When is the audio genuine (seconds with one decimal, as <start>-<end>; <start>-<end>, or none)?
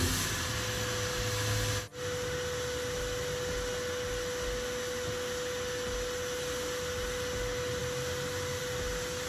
0.0-9.3